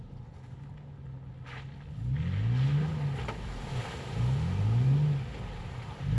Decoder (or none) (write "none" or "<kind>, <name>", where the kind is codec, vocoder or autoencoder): none